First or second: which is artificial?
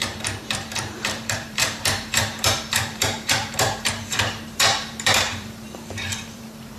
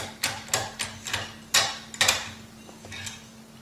first